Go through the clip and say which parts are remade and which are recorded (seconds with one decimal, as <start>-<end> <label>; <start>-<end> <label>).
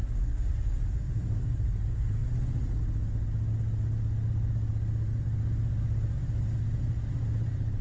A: 0.0-0.5 recorded; 0.5-2.2 remade; 2.2-6.8 recorded; 6.8-7.8 remade